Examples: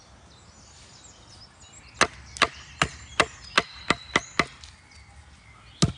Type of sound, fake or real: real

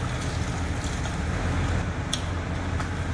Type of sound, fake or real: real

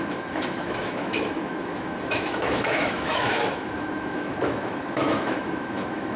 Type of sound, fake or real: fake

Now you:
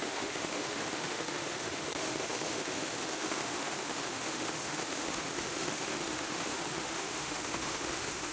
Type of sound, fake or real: fake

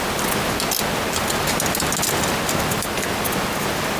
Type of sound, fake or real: real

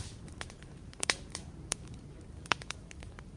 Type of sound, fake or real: fake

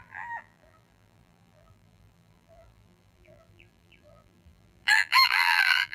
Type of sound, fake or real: fake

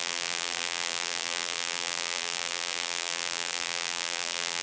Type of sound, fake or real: fake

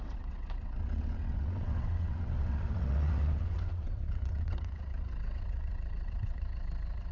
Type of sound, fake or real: fake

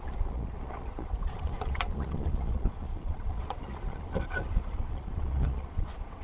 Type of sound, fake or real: fake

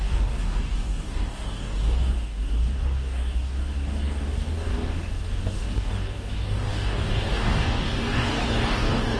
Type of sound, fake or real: fake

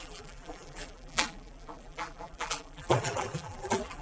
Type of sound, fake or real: fake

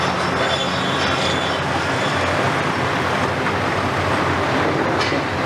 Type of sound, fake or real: real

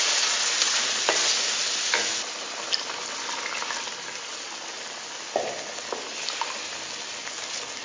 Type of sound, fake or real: real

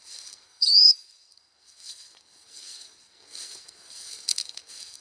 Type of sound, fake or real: fake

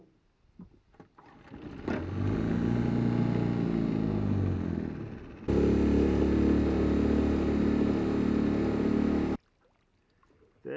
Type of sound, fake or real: real